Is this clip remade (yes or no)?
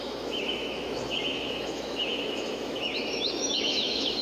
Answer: yes